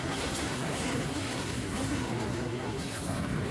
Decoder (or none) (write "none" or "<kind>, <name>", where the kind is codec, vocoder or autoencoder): codec, SNAC